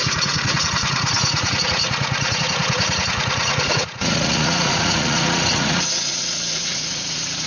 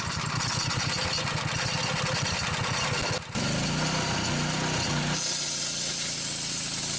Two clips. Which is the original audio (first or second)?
second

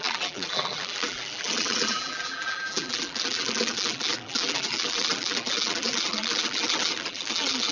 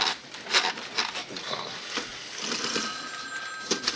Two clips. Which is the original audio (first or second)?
second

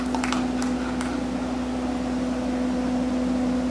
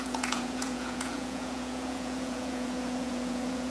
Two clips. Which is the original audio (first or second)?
first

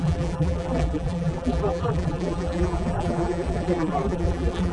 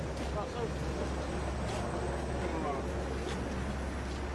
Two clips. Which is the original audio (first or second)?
second